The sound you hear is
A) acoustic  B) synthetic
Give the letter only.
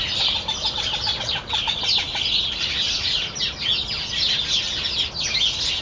A